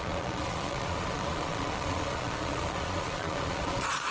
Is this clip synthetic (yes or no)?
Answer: yes